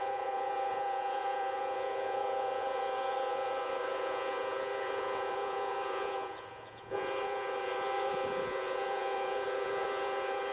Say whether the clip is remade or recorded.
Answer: remade